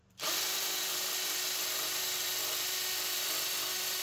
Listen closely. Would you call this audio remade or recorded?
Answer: remade